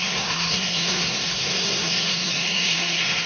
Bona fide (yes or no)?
no